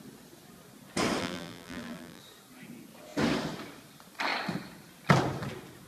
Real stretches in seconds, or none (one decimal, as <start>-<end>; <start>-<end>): 0.0-1.2; 2.2-5.9